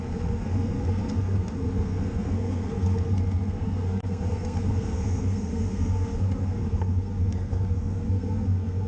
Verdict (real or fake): fake